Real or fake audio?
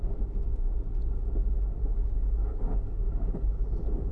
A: real